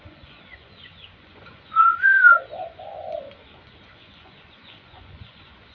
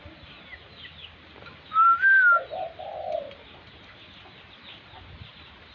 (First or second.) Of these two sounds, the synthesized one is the first